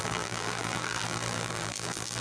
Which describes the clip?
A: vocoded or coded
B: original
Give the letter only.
A